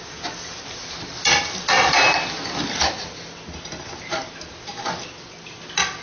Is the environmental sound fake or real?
real